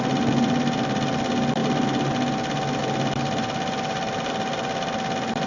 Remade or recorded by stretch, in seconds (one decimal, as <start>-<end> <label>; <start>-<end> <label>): 0.0-5.5 recorded

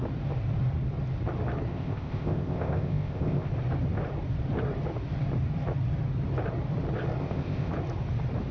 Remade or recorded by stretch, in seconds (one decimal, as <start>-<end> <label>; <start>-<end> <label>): 0.0-1.7 recorded; 1.7-3.5 remade; 3.5-7.2 recorded; 7.2-7.7 remade; 7.7-8.5 recorded

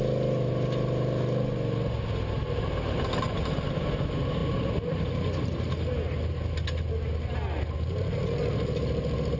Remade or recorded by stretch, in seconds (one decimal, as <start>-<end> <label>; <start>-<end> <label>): 0.0-9.4 recorded